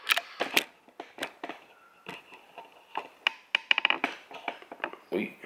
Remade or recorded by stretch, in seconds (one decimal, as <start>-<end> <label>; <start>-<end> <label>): 0.0-5.5 recorded